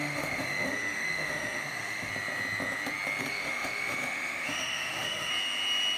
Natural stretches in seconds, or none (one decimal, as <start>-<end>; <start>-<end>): 2.1-3.3; 5.3-6.0

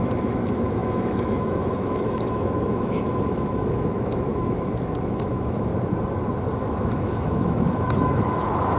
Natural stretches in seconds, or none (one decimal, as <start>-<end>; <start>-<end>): 5.7-6.5

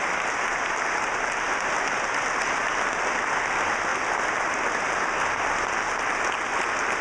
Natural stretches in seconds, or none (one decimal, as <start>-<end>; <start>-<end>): 0.0-7.0

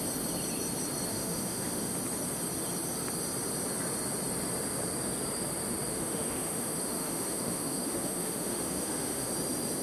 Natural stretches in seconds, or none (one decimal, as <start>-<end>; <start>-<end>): 0.0-1.1; 1.9-5.9; 9.3-9.8

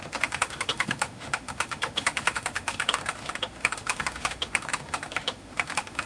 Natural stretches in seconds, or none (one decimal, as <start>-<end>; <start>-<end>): none

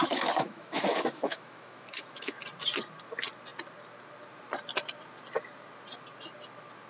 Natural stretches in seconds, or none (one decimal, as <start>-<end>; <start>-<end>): 2.4-6.9

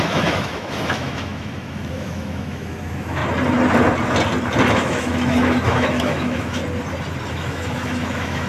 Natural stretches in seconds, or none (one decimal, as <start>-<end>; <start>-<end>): 3.2-4.7; 6.6-7.3

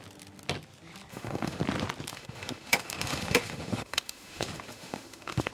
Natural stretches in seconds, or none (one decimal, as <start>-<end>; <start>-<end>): 0.0-1.1; 1.6-2.1